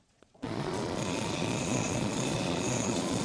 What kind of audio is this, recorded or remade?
remade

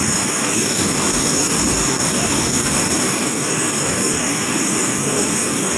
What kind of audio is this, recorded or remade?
remade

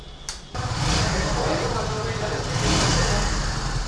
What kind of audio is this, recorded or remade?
recorded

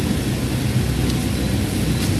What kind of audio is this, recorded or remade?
recorded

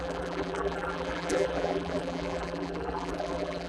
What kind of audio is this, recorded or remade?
remade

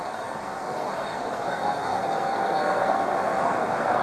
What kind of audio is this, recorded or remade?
remade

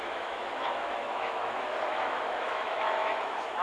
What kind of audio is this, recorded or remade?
remade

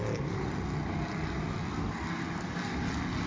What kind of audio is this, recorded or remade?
recorded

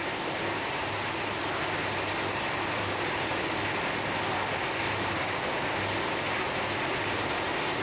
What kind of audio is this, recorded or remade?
recorded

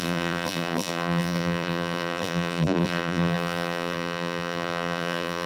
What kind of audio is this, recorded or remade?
remade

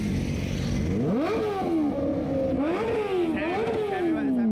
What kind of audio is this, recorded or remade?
recorded